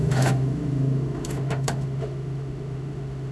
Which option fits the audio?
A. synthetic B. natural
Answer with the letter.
A